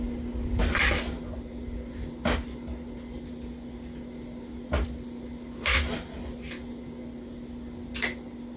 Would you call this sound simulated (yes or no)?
no